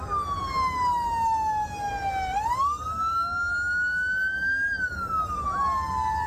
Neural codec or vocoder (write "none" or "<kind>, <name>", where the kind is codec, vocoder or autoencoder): none